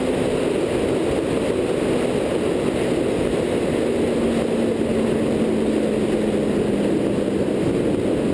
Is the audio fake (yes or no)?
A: no